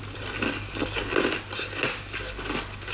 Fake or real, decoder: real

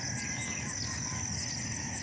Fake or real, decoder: real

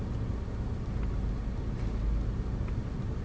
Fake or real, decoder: real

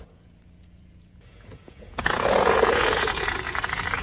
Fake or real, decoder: fake, vocoder, Vocos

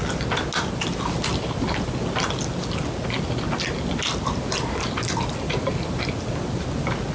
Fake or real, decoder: real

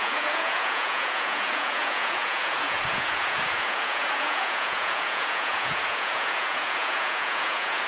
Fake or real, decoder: fake, vocoder, Vocos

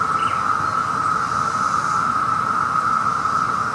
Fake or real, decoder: real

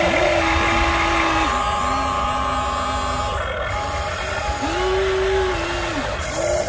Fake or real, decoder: real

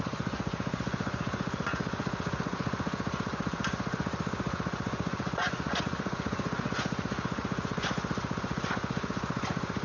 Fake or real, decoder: fake, vocoder, Vocos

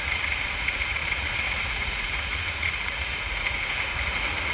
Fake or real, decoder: fake, vocoder, Vocos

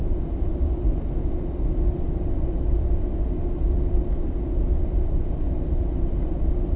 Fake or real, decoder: real